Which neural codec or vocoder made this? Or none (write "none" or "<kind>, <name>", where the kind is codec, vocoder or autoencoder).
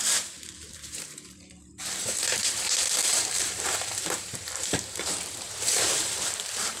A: vocoder, BigVGAN v2